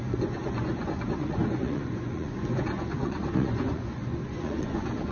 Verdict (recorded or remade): remade